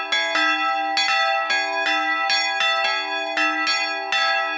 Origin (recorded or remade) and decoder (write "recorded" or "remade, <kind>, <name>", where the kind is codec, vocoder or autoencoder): recorded